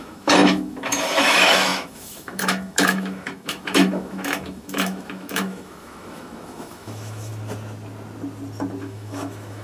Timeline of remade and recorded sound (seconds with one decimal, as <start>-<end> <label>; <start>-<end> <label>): 0.0-7.3 remade; 7.3-8.8 recorded; 8.8-9.6 remade